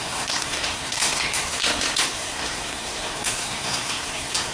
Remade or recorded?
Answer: remade